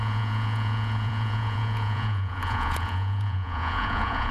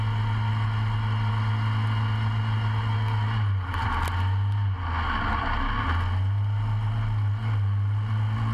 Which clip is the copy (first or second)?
first